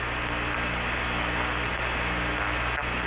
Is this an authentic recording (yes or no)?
yes